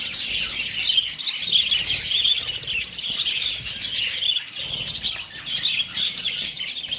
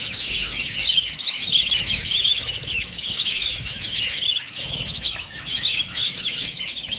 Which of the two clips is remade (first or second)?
second